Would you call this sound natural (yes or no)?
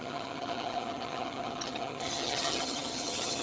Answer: no